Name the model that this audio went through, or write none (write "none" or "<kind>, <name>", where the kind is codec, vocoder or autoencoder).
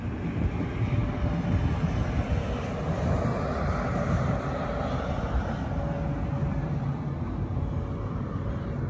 none